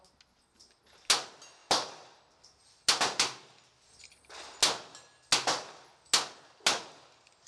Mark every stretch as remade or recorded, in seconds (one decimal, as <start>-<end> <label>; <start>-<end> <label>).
0.0-7.5 recorded